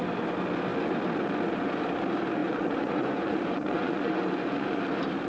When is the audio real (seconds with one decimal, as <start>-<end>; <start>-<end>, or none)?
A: 0.0-2.4; 4.8-5.3